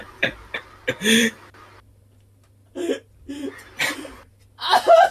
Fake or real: real